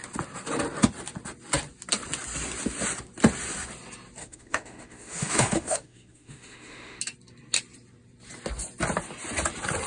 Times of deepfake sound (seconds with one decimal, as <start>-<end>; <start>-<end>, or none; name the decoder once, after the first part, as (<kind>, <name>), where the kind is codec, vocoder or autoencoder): 4.2-7.0 (autoencoder, DAC-VAE)

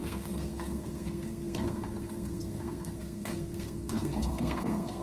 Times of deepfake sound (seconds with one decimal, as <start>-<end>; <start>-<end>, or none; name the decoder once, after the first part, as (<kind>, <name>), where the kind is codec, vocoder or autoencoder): 0.0-5.0 (codec, SNAC)